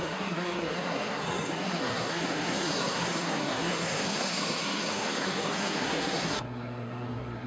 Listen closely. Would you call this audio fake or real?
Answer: fake